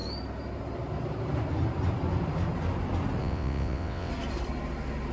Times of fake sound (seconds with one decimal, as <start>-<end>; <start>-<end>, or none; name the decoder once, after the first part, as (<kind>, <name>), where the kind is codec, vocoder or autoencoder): 3.2-4.1 (vocoder, WaveNeXt)